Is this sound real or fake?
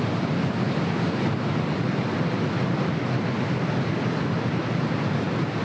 real